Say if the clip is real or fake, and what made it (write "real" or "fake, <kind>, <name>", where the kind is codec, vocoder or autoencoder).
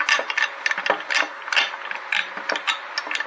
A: real